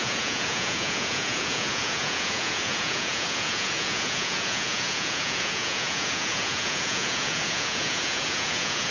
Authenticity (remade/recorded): remade